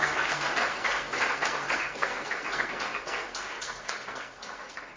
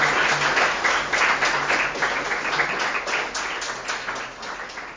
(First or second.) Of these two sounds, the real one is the second